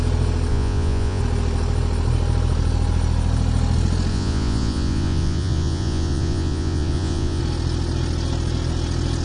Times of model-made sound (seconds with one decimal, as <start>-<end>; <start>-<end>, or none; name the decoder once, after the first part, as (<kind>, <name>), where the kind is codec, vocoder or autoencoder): 0.5-1.2 (vocoder, Vocos); 4.1-7.4